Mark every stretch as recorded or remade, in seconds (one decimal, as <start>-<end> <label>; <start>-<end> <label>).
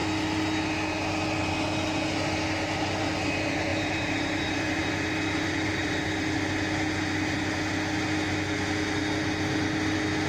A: 0.0-3.7 recorded; 3.7-5.9 remade; 5.9-10.3 recorded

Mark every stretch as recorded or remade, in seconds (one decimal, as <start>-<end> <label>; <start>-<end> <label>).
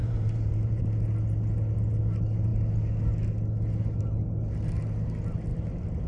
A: 0.0-0.8 remade; 0.8-5.5 recorded; 5.5-6.1 remade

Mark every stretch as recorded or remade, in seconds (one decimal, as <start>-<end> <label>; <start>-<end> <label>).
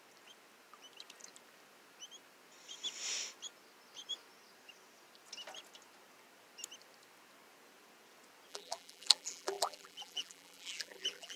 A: 0.0-8.5 recorded; 8.5-11.4 remade